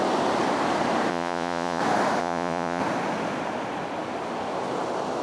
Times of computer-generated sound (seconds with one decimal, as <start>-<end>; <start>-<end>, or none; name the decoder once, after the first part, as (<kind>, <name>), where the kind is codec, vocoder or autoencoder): 1.1-1.8 (vocoder, Vocos); 2.2-2.8